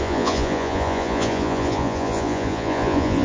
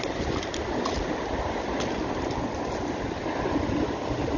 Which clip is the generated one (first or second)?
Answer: first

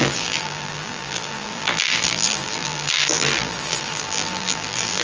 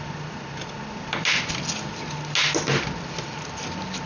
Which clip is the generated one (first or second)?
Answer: first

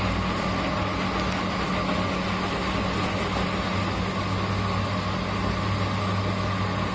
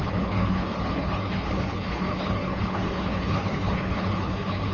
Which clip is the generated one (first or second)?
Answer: second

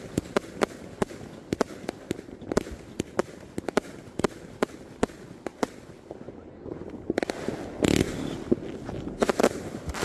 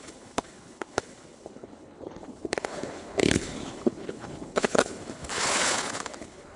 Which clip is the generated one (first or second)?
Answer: second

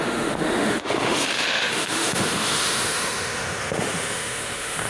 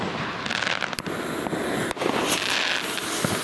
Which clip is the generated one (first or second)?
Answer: first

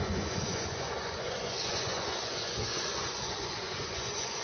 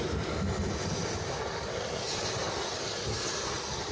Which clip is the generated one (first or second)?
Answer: first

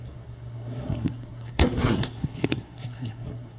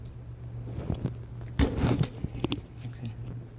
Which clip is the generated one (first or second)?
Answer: first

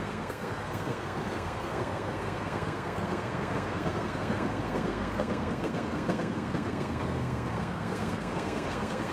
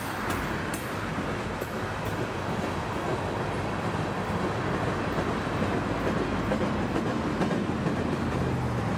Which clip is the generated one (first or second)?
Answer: first